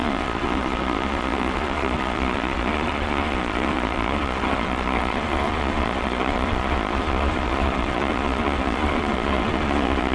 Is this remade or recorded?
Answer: remade